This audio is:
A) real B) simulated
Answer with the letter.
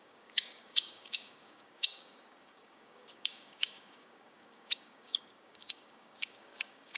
B